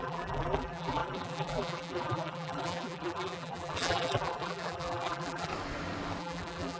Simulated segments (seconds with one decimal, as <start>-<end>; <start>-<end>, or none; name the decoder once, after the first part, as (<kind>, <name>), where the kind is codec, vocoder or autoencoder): 0.0-5.5 (vocoder, BigVGAN v2); 6.2-6.8